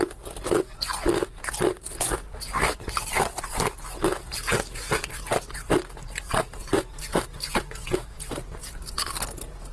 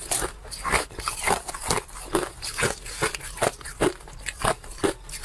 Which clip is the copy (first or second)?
second